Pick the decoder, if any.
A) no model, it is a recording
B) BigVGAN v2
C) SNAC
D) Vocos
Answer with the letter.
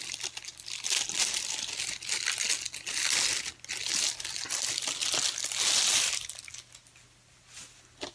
A